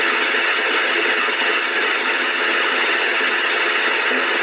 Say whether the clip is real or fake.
fake